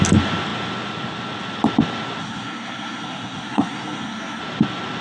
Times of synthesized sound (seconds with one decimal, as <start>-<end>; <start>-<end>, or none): 2.2-4.4